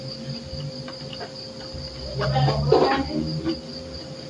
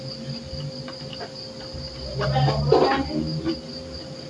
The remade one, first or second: first